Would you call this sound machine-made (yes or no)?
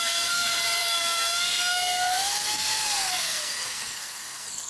yes